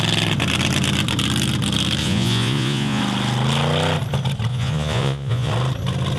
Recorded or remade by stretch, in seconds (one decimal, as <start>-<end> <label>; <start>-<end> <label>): 0.0-2.0 recorded; 2.0-3.0 remade; 3.0-4.5 recorded; 4.5-5.5 remade; 5.5-6.2 recorded